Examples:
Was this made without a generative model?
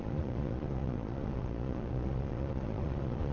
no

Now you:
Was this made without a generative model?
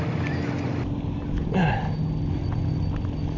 yes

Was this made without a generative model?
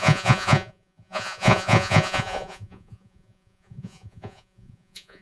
no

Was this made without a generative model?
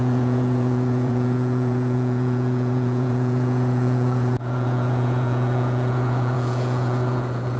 no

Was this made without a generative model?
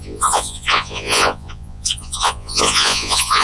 no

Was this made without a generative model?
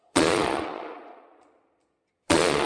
no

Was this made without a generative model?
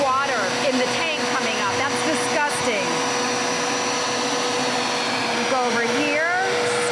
yes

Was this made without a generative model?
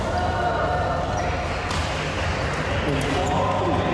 yes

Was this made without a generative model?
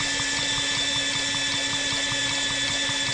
yes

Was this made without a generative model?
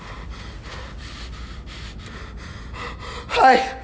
yes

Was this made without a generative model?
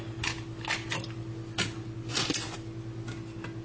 yes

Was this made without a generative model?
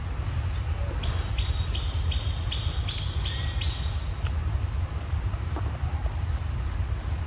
yes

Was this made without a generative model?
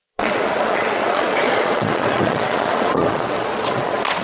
no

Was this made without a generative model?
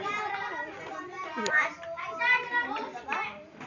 yes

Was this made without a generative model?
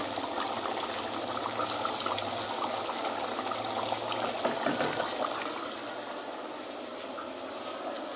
yes